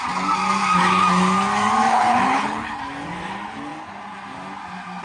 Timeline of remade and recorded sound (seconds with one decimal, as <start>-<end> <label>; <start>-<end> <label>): 0.0-1.9 recorded; 1.9-2.8 remade; 2.8-5.0 recorded